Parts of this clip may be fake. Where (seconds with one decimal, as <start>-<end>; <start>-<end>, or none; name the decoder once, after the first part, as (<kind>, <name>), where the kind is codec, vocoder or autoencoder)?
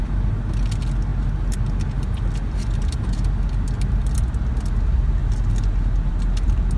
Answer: none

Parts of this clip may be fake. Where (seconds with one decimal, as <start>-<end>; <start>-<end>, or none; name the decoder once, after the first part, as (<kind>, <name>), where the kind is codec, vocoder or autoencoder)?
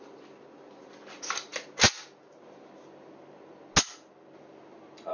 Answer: none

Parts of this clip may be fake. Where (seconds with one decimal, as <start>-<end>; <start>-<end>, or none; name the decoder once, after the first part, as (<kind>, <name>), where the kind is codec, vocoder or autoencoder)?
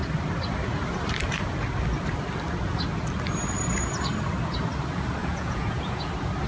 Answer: 5.2-6.1 (vocoder, Vocos)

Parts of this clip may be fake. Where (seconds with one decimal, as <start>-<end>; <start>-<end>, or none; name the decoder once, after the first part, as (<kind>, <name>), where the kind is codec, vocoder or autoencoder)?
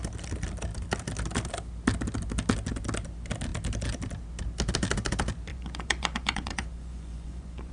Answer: 5.5-7.7 (vocoder, Vocos)